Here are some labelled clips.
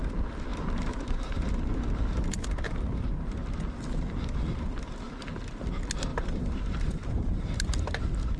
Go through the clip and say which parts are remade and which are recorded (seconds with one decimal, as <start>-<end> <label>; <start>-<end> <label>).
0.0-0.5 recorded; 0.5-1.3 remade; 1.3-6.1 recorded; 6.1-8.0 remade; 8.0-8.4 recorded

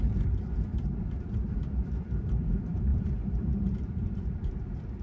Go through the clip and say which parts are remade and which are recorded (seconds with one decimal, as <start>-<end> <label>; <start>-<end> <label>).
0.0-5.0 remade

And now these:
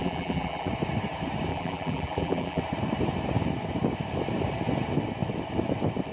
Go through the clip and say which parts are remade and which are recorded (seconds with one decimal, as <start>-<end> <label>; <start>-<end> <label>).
0.0-0.7 remade; 0.7-1.5 recorded; 1.5-2.6 remade; 2.6-6.1 recorded

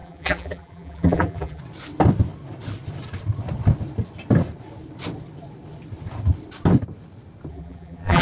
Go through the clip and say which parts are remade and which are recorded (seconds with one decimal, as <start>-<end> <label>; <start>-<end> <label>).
0.0-1.6 remade; 1.6-7.5 recorded; 7.5-8.2 remade

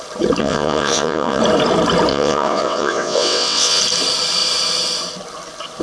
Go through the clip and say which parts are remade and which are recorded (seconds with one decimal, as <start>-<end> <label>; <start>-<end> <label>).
0.0-0.4 recorded; 0.4-1.4 remade; 1.4-2.1 recorded; 2.1-3.8 remade; 3.8-5.8 recorded

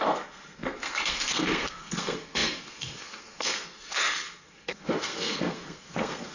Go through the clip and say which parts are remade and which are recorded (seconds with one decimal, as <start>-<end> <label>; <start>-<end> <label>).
0.0-6.3 remade